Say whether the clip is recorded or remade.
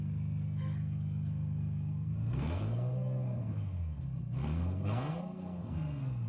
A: remade